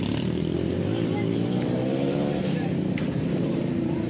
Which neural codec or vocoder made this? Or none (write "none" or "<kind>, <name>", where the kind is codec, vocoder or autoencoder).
vocoder, BigVGAN v2